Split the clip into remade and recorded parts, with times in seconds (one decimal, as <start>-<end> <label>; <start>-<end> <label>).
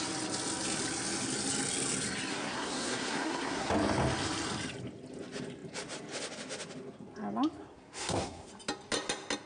0.0-2.3 recorded; 2.3-3.7 remade; 3.7-7.7 recorded; 7.7-8.5 remade; 8.5-9.5 recorded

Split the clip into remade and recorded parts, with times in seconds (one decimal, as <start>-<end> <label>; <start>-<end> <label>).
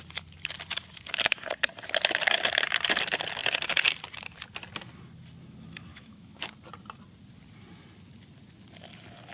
0.0-5.9 recorded; 5.9-6.5 remade; 6.5-9.3 recorded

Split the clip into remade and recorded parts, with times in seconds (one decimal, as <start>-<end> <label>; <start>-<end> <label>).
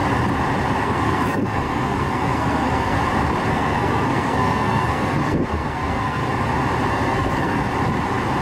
0.0-0.8 recorded; 0.8-3.0 remade; 3.0-3.5 recorded; 3.5-6.2 remade; 6.2-6.9 recorded; 6.9-7.7 remade; 7.7-8.4 recorded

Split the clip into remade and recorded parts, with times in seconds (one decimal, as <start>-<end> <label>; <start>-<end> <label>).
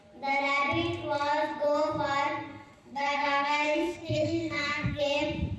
0.0-2.5 recorded; 2.5-5.0 remade; 5.0-5.6 recorded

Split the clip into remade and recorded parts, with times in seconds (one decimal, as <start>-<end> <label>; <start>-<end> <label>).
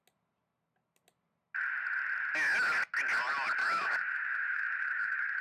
0.0-3.6 recorded; 3.6-5.4 remade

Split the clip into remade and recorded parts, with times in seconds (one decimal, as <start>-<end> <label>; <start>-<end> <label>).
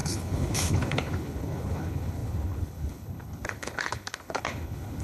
0.0-5.0 remade